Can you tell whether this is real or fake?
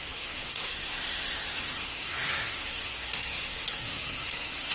fake